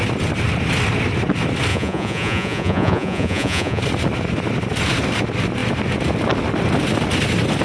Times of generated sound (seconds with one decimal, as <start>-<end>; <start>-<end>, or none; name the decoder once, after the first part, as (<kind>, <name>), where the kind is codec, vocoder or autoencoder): 1.7-3.8 (vocoder, Vocos)